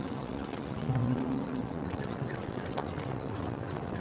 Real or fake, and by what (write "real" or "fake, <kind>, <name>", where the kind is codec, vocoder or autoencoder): fake, vocoder, WaveNeXt